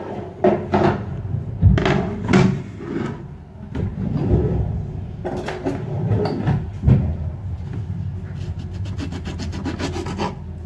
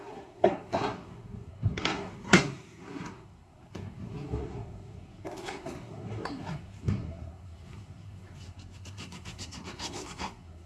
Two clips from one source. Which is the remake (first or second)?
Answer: second